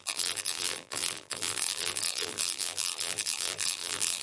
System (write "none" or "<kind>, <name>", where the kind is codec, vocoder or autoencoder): vocoder, BigVGAN v2